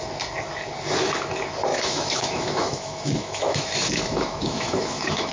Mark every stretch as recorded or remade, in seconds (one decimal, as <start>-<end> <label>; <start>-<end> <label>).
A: 0.0-1.7 recorded; 1.7-5.3 remade